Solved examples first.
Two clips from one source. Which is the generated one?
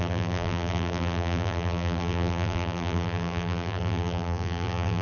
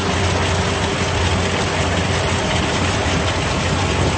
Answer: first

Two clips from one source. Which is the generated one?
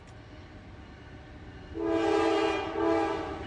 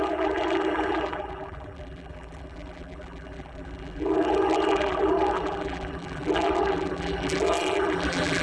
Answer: second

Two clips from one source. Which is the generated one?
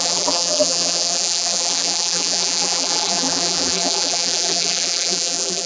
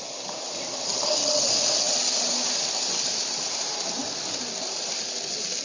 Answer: first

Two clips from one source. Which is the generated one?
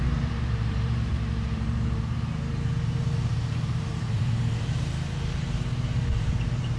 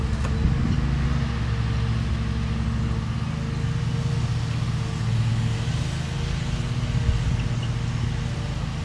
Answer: first